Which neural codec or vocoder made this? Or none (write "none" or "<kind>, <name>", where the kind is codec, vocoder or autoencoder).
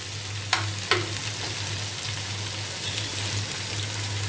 none